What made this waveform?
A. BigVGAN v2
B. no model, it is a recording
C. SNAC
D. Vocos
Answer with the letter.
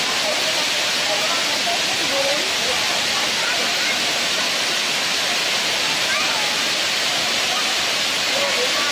B